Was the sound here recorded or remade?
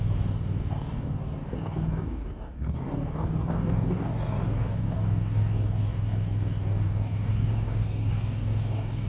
remade